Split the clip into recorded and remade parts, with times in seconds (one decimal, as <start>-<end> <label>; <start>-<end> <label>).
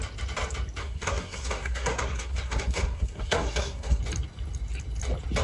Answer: 0.0-0.8 recorded; 0.8-4.0 remade; 4.0-5.4 recorded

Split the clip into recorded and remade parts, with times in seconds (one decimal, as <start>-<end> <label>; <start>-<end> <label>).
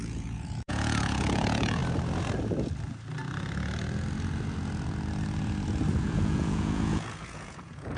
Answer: 0.0-1.8 remade; 1.8-6.0 recorded; 6.0-8.0 remade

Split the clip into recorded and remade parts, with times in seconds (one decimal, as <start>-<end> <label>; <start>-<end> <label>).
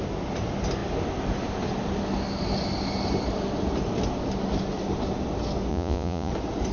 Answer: 0.0-5.7 recorded; 5.7-6.3 remade; 6.3-6.7 recorded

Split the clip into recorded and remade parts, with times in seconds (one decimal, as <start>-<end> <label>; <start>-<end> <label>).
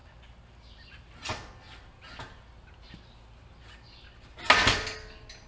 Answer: 0.0-5.5 recorded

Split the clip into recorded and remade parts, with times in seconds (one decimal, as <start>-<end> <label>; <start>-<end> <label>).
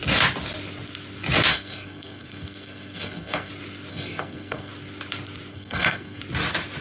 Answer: 0.0-1.5 recorded; 1.5-3.5 remade; 3.5-3.9 recorded; 3.9-4.7 remade; 4.7-5.5 recorded; 5.5-6.2 remade; 6.2-6.8 recorded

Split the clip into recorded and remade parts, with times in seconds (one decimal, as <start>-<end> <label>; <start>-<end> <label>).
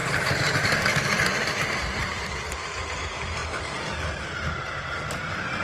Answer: 0.0-2.2 remade; 2.2-5.6 recorded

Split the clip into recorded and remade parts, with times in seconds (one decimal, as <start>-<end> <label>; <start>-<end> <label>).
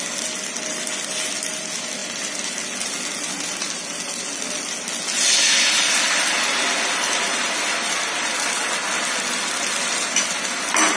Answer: 0.0-11.0 recorded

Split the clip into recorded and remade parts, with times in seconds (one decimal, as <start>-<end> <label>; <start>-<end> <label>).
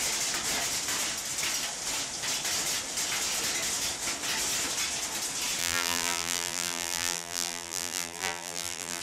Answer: 0.0-5.6 recorded; 5.6-9.0 remade